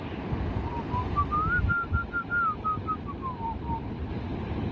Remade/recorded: recorded